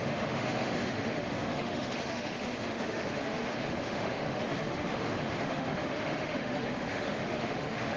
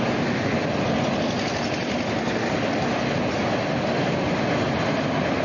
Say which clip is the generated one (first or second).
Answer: first